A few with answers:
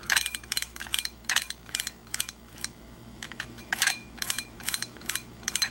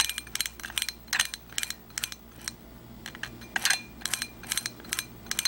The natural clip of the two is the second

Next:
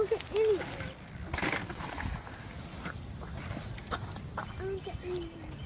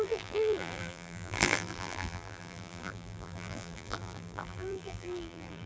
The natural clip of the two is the first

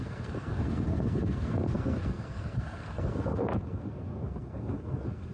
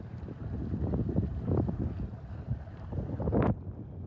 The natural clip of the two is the second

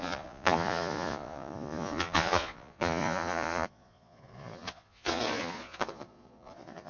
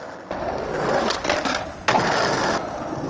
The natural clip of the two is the second